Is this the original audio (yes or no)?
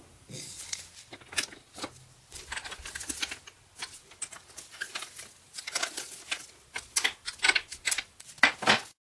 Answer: yes